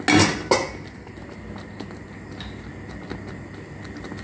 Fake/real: real